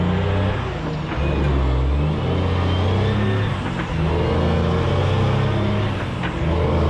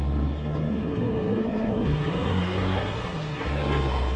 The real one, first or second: first